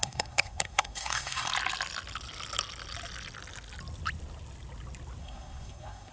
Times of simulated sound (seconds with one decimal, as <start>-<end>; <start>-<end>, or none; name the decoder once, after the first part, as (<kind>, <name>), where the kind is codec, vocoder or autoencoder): 0.0-1.5 (codec, SNAC); 5.2-6.1